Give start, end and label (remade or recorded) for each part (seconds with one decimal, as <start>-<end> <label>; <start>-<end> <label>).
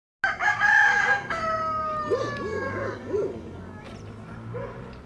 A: 0.0-0.4 recorded; 0.4-1.4 remade; 1.4-2.5 recorded; 2.5-3.8 remade; 3.8-5.1 recorded